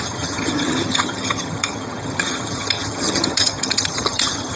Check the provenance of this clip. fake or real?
fake